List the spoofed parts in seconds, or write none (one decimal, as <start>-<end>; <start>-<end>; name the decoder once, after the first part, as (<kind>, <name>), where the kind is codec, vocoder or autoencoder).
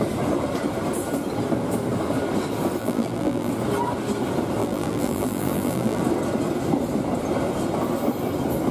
2.8-3.5 (vocoder, BigVGAN v2); 4.6-6.0